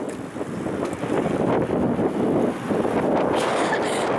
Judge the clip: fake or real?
real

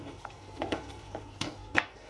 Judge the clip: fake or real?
fake